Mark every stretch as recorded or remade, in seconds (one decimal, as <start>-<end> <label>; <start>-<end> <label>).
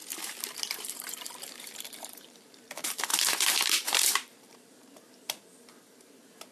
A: 0.0-6.5 remade